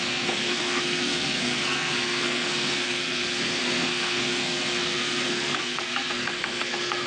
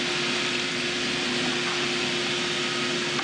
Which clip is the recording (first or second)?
second